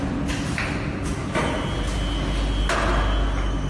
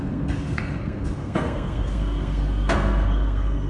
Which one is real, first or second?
first